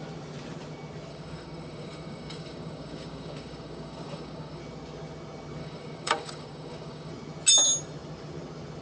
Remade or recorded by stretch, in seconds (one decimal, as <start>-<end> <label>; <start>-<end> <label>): 0.0-1.1 recorded; 1.1-4.6 remade; 4.6-5.6 recorded; 5.6-7.1 remade; 7.1-8.8 recorded